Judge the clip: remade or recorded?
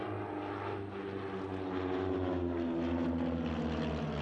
recorded